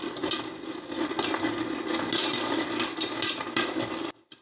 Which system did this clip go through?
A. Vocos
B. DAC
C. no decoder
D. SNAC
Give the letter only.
C